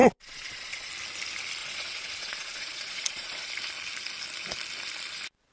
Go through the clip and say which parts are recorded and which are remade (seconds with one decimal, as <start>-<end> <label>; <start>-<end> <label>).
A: 0.0-0.9 remade; 0.9-1.6 recorded; 1.6-3.5 remade; 3.5-5.5 recorded